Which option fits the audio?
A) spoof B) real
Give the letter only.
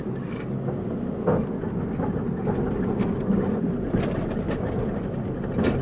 B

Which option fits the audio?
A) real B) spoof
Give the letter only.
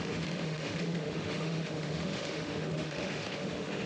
B